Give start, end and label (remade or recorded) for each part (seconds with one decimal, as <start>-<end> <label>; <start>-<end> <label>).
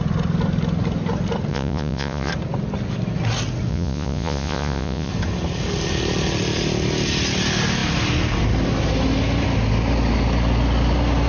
0.0-1.5 recorded; 1.5-2.3 remade; 2.3-3.7 recorded; 3.7-5.1 remade; 5.1-11.3 recorded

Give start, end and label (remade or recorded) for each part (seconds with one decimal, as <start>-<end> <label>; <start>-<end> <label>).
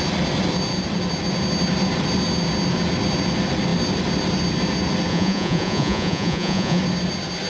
0.0-5.1 recorded; 5.1-6.8 remade; 6.8-7.5 recorded